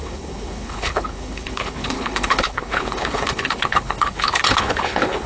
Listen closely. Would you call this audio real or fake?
fake